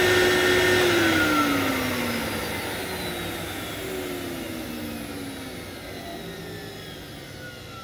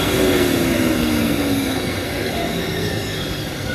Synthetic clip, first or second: second